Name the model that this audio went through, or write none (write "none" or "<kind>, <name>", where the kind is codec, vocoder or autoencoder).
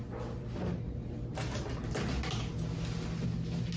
none